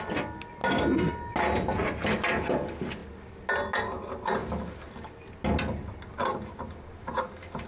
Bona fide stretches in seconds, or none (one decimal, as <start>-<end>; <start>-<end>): 0.0-7.7